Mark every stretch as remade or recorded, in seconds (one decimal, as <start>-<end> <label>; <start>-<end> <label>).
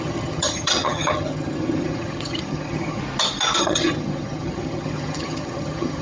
0.0-3.0 remade; 3.0-3.6 recorded; 3.6-6.0 remade